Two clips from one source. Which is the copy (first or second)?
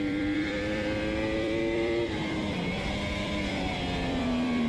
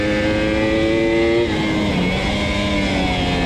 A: first